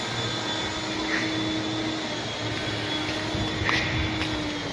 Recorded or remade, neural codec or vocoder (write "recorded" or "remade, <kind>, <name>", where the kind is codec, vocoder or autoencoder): recorded